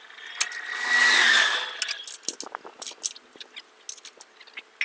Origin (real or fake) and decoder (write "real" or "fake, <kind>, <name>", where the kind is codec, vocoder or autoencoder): real